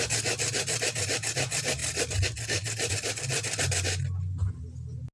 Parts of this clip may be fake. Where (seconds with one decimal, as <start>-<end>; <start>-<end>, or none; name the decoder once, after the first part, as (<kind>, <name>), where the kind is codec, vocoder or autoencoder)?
none